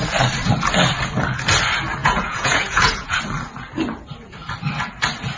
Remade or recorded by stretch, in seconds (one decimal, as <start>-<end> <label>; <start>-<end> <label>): 0.0-2.0 recorded; 2.0-3.2 remade; 3.2-5.4 recorded